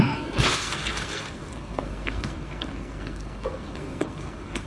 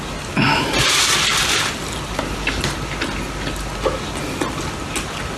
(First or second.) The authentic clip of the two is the second